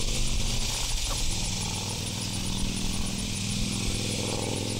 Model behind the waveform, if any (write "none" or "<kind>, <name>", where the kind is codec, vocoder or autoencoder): vocoder, BigVGAN v2